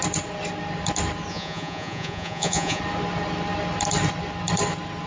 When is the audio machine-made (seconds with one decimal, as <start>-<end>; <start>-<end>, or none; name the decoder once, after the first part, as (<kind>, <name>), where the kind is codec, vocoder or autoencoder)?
1.3-2.8 (vocoder, Vocos)